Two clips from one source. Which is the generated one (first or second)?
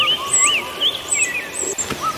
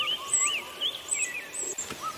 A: second